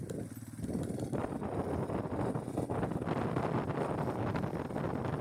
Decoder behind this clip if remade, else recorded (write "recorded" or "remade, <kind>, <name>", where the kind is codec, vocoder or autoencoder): recorded